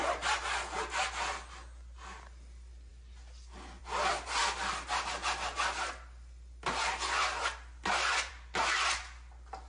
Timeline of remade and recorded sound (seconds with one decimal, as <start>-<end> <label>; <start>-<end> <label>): 0.0-9.7 recorded